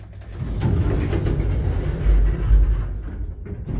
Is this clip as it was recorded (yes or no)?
yes